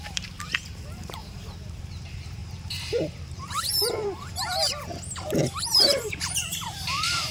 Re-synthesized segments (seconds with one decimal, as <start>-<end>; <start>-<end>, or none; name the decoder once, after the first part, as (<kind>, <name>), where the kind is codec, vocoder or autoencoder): 0.0-4.9 (vocoder, BigVGAN v2); 5.6-7.3